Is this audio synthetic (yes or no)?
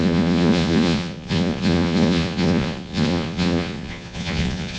yes